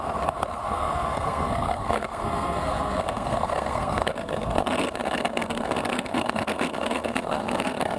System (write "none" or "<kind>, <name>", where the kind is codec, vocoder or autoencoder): codec, SNAC